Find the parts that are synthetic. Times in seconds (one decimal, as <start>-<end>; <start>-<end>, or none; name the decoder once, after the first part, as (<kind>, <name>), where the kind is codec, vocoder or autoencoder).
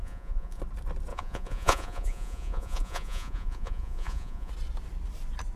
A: 0.0-0.6 (vocoder, Vocos); 1.1-4.5